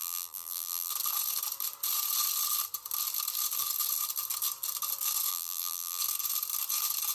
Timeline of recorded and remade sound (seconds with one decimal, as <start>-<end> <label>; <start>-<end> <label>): 0.0-0.9 remade; 0.9-5.3 recorded; 5.3-6.0 remade; 6.0-7.1 recorded